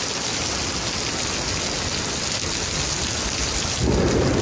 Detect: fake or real real